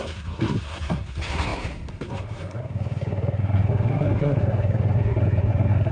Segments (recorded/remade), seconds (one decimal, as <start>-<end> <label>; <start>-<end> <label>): 0.0-5.9 remade